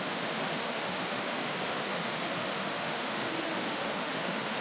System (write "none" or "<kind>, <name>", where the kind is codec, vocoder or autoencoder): autoencoder, DAC-VAE